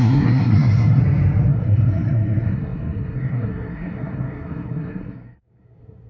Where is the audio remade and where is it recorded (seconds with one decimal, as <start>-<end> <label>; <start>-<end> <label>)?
0.0-1.0 remade; 1.0-1.5 recorded; 1.5-6.1 remade